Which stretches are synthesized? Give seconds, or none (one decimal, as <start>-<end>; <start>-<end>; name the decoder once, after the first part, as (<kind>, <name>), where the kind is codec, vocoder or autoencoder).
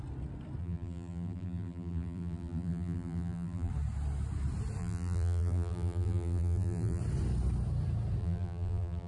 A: 0.6-3.7 (vocoder, BigVGAN v2); 4.8-7.0; 8.2-9.1